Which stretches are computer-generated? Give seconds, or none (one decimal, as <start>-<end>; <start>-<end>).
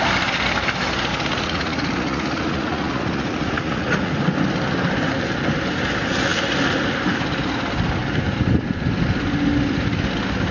1.1-4.1